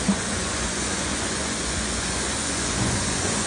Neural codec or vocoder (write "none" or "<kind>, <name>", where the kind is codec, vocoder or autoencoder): vocoder, Vocos